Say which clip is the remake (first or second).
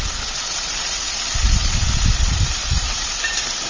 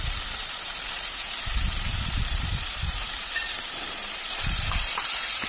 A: second